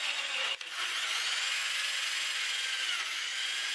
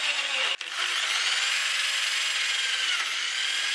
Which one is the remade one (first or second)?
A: first